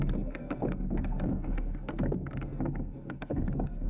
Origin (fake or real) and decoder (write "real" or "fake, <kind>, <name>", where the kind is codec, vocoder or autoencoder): fake, codec, SNAC